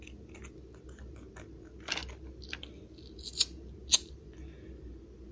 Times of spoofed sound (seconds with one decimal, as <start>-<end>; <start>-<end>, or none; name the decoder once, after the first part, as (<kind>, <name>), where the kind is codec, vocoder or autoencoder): none